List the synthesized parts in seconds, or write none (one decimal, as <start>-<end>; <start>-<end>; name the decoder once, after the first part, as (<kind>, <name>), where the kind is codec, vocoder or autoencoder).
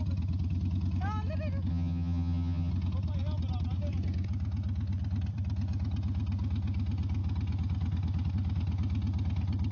1.7-2.7 (vocoder, HiFi-GAN)